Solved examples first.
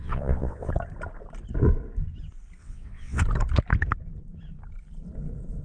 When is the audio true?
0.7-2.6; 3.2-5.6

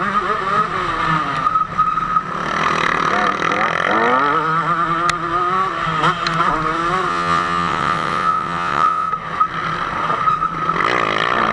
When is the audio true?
0.0-7.1; 9.1-11.5